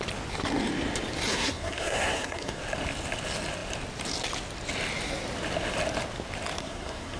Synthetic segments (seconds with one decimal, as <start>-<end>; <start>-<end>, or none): 1.3-2.6; 6.6-7.2